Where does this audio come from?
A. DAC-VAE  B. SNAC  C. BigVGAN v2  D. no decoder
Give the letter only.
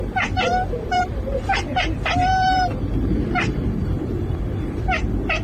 C